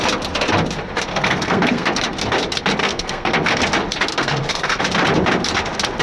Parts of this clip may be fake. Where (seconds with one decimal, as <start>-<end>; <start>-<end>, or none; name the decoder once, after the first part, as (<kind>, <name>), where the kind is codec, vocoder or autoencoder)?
1.1-2.0 (codec, SNAC); 2.8-3.6; 4.1-4.8

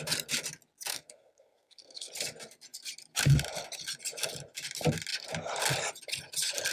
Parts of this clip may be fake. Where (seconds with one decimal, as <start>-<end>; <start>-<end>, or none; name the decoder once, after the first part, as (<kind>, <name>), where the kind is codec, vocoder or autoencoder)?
0.9-2.1 (codec, SNAC)

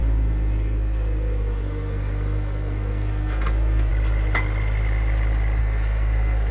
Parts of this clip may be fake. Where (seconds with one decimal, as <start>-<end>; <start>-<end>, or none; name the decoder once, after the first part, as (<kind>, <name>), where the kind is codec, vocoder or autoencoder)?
0.0-3.9 (codec, SNAC); 5.6-6.5

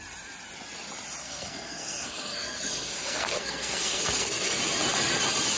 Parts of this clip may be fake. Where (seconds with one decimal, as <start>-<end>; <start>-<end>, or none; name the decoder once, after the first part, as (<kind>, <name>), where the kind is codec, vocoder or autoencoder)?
1.2-4.6 (codec, SNAC)

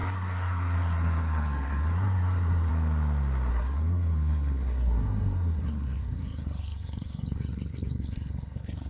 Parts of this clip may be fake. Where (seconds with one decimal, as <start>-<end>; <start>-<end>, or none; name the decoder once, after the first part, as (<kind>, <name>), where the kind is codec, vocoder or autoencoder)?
0.0-2.7 (codec, SNAC); 3.5-8.9

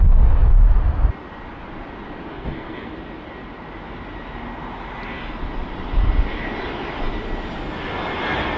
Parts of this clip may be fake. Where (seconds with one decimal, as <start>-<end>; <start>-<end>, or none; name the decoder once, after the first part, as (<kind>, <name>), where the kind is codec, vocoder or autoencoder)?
2.3-2.9 (codec, SNAC)